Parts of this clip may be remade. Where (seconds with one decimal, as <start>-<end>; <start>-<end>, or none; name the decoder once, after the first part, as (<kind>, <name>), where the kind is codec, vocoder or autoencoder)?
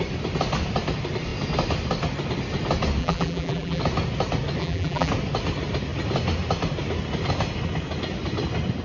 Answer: 3.0-3.8 (vocoder, BigVGAN v2); 4.6-5.1